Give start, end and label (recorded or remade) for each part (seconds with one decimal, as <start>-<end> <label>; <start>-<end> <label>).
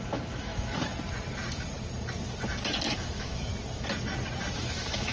0.0-0.8 remade; 0.8-3.0 recorded; 3.0-3.5 remade; 3.5-4.6 recorded; 4.6-5.1 remade